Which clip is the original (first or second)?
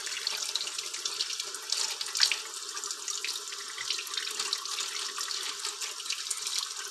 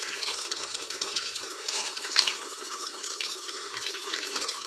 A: first